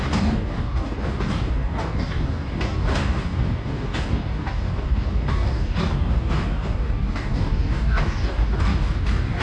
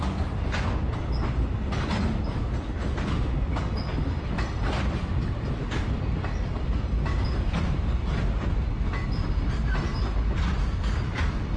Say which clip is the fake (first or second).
first